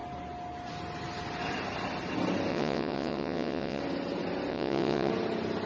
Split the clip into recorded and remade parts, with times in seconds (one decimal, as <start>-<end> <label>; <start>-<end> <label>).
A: 0.0-2.5 recorded; 2.5-3.8 remade; 3.8-4.5 recorded; 4.5-5.1 remade; 5.1-5.7 recorded